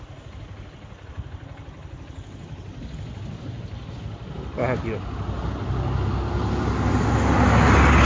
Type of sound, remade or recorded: recorded